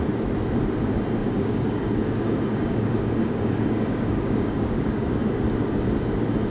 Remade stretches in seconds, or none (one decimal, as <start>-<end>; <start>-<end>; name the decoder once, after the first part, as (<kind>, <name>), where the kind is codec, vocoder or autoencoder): 1.2-5.1 (codec, DAC)